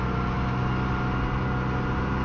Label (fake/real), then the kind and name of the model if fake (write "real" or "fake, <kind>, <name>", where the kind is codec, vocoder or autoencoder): real